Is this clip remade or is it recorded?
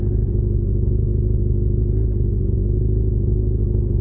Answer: recorded